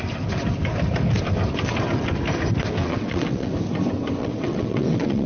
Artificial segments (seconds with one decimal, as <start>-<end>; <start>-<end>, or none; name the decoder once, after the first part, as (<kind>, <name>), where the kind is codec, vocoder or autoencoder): 2.8-3.5 (vocoder, WaveNeXt); 4.2-5.3